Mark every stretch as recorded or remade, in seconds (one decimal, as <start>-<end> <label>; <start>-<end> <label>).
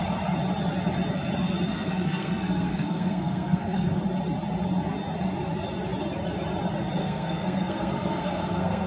0.0-1.7 recorded; 1.7-4.0 remade; 4.0-7.0 recorded; 7.0-8.9 remade